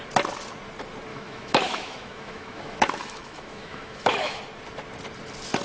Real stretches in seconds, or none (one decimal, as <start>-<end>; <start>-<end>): 0.0-1.1; 4.4-5.6